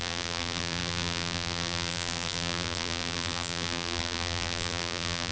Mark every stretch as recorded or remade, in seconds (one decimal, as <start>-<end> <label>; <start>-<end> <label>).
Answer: 0.0-5.3 remade